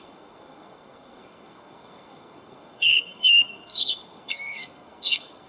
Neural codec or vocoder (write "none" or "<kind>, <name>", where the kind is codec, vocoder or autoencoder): codec, SNAC